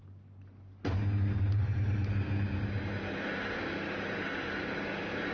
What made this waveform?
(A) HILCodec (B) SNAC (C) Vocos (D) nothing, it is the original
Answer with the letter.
D